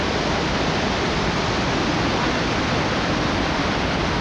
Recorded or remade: recorded